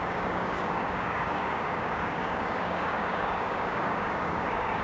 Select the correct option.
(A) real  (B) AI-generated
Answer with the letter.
B